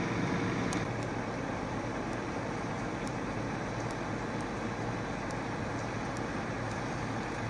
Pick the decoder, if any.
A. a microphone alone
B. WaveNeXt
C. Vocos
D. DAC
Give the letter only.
A